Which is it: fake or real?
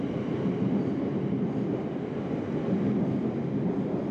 real